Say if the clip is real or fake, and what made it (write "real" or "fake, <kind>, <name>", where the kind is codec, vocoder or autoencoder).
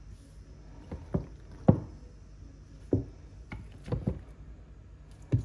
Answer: real